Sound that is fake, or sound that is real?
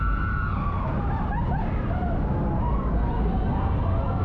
real